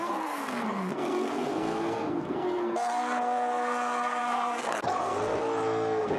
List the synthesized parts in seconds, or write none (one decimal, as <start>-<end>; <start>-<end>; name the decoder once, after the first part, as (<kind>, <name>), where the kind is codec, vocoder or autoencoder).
0.0-6.2 (codec, SNAC)

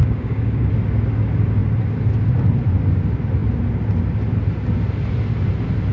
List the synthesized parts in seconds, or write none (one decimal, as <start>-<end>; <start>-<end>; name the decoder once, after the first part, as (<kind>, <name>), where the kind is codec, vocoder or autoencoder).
0.0-0.7 (codec, DAC)